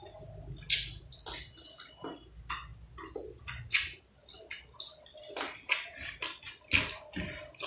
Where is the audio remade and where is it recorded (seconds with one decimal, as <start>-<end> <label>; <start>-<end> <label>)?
0.0-7.7 recorded

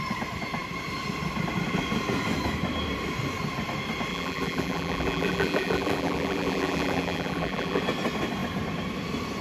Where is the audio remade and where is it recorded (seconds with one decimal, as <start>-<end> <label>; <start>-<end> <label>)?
0.0-4.1 recorded; 4.1-7.8 remade; 7.8-9.4 recorded

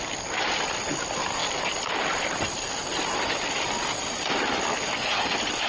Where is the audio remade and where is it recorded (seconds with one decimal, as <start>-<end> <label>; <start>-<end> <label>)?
0.0-1.4 recorded; 1.4-4.2 remade; 4.2-5.7 recorded

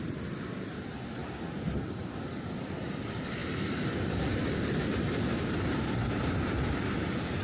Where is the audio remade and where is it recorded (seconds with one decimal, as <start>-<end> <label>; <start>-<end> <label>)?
0.0-1.2 remade; 1.2-2.6 recorded; 2.6-7.4 remade